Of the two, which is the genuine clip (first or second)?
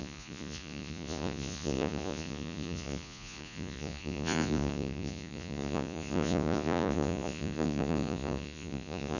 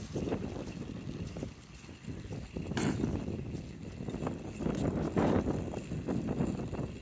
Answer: second